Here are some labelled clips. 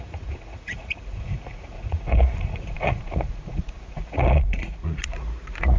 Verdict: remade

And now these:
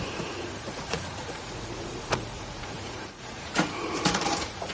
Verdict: remade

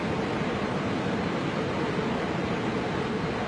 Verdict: recorded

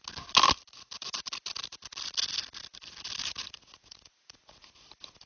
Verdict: recorded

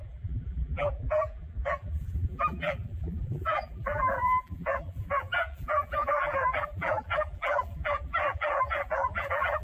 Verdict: remade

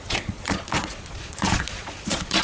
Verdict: remade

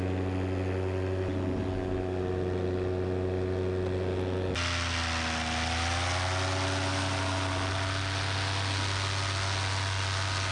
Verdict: recorded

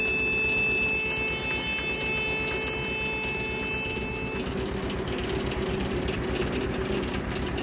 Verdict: recorded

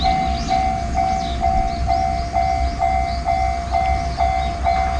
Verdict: recorded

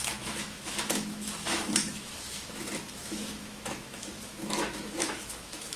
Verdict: remade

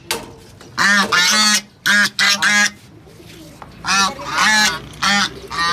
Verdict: recorded